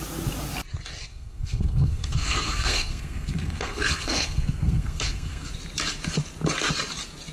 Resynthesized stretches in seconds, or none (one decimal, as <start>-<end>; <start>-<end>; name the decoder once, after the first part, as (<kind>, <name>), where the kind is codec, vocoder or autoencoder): 1.1-5.5 (codec, SNAC)

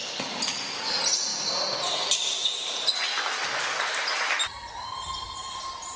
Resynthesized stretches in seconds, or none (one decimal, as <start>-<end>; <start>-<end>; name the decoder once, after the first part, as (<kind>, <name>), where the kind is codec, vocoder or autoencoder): none

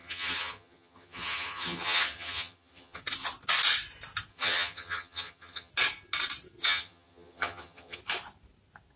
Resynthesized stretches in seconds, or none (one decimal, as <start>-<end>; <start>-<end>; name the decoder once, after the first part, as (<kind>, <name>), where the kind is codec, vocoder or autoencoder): 0.0-3.0 (vocoder, HiFi-GAN); 4.3-5.7; 6.6-8.0

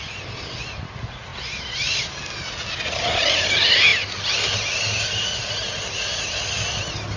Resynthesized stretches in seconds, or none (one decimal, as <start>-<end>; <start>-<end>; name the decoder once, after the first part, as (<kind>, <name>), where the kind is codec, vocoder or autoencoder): none

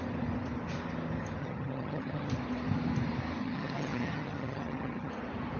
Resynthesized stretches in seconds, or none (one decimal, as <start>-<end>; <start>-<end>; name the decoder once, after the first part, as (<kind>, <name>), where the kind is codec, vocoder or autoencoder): 1.4-2.3 (vocoder, HiFi-GAN); 3.4-5.1

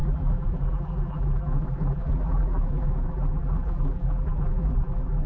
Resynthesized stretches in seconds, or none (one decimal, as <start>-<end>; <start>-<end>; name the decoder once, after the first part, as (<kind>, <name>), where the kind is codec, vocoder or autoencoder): 0.0-5.3 (vocoder, BigVGAN v2)

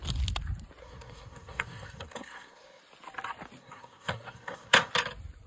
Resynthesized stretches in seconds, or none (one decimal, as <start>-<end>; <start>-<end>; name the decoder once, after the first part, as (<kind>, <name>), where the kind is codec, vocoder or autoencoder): 0.8-2.8 (codec, SNAC); 3.6-4.9